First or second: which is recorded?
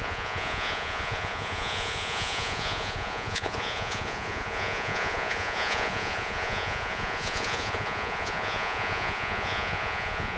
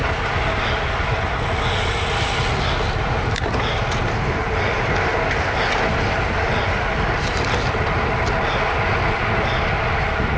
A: second